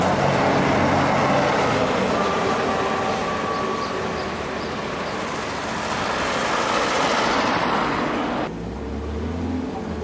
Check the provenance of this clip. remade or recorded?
recorded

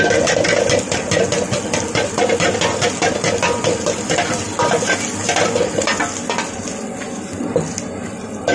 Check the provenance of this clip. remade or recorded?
recorded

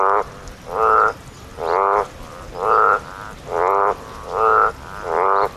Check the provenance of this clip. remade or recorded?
recorded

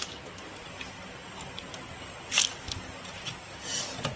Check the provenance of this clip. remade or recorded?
recorded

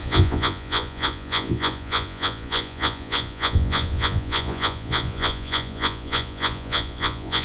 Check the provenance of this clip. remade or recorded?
remade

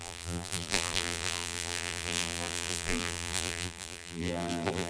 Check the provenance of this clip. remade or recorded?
remade